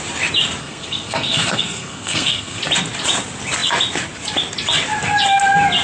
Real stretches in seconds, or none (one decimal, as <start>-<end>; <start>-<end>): 0.0-0.6; 2.6-5.8